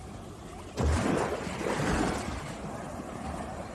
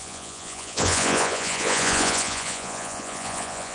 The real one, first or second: first